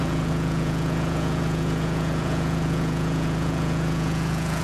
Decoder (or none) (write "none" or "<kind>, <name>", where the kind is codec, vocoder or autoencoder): vocoder, Vocos